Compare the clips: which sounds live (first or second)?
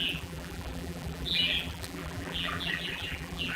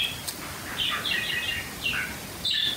second